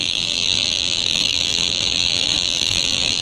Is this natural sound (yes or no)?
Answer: no